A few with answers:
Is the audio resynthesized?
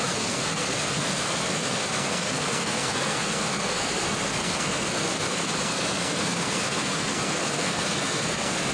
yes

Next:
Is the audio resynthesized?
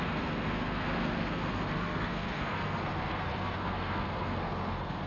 yes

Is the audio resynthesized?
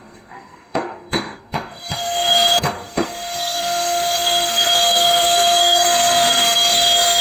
yes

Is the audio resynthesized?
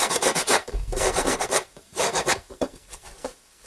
yes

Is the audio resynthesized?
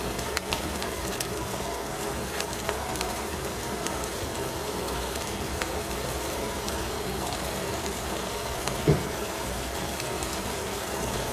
yes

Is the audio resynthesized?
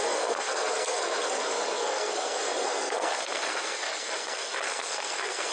yes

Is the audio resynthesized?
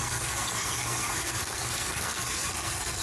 yes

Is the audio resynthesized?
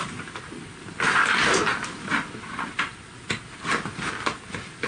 no